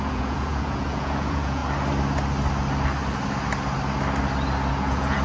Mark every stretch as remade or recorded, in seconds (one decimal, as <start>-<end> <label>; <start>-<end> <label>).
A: 0.0-1.6 remade; 1.6-4.7 recorded; 4.7-5.2 remade